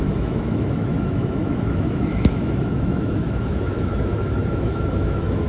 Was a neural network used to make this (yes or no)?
yes